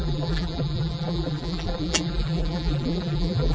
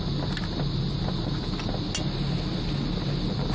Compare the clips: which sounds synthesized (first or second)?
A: first